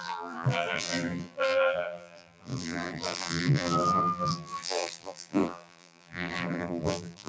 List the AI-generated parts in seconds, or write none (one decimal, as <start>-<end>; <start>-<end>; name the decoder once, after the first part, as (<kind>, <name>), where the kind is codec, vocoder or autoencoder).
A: 0.0-7.3 (vocoder, BigVGAN v2)